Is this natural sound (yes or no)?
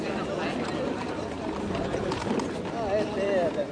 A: yes